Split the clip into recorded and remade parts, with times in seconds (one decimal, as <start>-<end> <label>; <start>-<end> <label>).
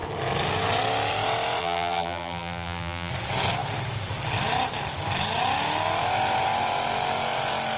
0.0-1.6 recorded; 1.6-3.1 remade; 3.1-7.8 recorded